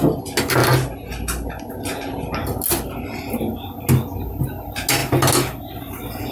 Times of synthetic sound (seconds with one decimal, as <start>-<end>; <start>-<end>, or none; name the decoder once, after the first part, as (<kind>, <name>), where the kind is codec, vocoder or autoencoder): none